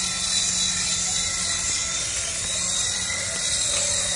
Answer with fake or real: real